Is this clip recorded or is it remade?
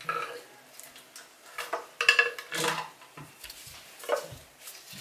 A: recorded